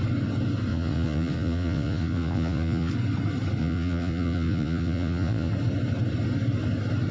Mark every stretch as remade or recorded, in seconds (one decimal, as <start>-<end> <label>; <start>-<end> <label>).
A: 0.0-0.7 recorded; 0.7-2.9 remade; 2.9-3.6 recorded; 3.6-5.5 remade; 5.5-7.1 recorded